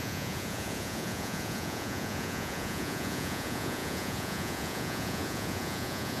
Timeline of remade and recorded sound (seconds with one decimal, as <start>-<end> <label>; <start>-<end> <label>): 0.0-6.2 remade